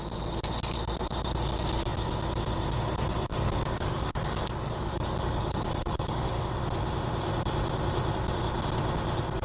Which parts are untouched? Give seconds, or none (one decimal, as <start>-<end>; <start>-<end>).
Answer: 0.0-3.3; 6.6-9.4